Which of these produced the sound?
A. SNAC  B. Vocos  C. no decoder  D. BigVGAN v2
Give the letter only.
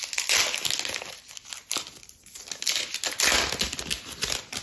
C